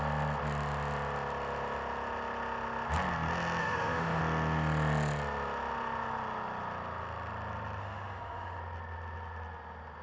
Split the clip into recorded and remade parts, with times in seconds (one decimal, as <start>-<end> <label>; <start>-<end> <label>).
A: 0.0-3.6 recorded; 3.6-4.2 remade; 4.2-7.8 recorded; 7.8-8.6 remade; 8.6-10.0 recorded

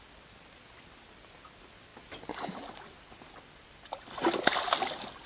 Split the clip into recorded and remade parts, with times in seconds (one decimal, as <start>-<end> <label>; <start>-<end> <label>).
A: 0.0-5.3 recorded

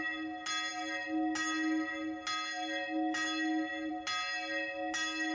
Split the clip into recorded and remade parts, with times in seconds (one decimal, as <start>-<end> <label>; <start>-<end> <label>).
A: 0.0-5.3 recorded